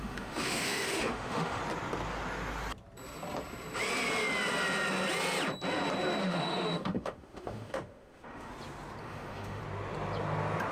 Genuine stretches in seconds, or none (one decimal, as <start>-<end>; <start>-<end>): 1.6-6.2; 8.5-9.0; 9.6-10.7